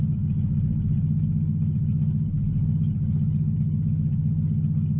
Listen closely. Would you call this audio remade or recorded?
recorded